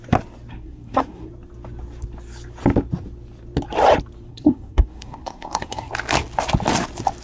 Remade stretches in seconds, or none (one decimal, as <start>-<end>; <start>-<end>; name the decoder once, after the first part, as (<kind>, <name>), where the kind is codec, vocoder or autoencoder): 0.5-1.3 (codec, SNAC); 4.3-5.9